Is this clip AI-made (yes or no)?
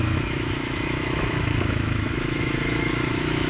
yes